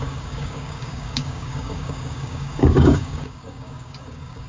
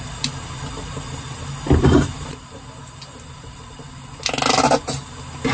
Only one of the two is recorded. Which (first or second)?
second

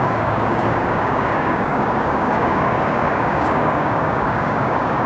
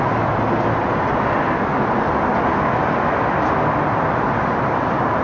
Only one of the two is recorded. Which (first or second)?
second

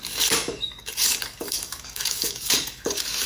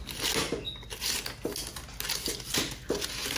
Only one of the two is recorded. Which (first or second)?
second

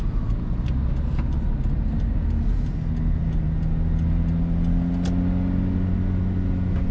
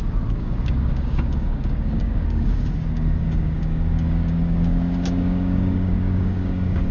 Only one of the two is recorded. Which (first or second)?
first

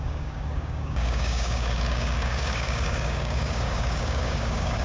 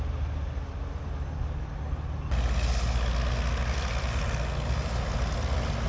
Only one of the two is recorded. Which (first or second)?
second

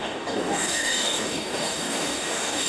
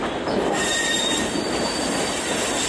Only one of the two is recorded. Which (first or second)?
second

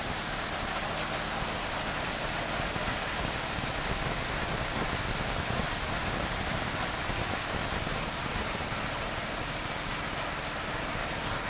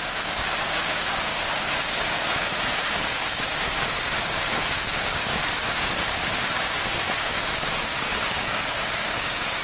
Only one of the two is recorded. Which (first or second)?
first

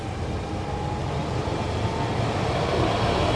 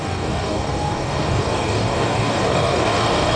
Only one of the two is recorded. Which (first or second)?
first